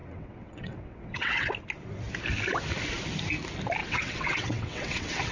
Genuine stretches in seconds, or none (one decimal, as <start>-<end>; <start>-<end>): 1.5-3.8